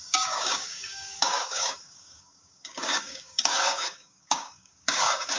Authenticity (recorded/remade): remade